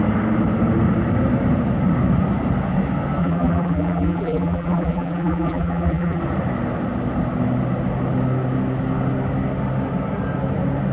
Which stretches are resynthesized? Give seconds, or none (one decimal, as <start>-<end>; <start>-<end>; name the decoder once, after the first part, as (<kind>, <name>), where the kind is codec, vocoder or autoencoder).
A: 3.2-6.2 (vocoder, BigVGAN v2)